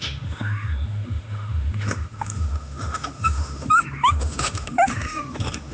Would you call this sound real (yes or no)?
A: no